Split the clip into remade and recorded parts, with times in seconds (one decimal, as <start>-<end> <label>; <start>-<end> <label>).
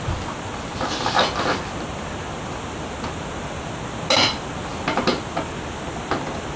0.0-6.6 recorded